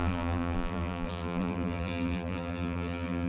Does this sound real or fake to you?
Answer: fake